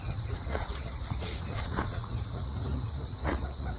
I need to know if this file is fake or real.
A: fake